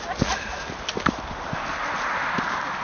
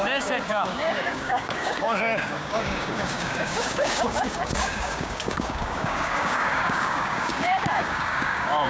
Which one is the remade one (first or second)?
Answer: second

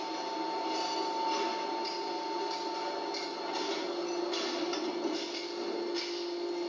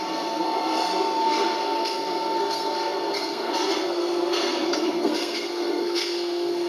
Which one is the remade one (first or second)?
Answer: second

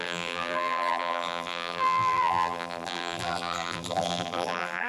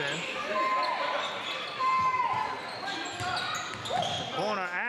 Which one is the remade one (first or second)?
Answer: first